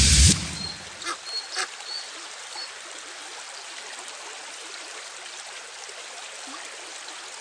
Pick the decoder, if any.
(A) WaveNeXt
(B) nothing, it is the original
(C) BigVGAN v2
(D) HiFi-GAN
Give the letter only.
B